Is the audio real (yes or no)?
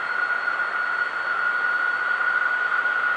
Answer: yes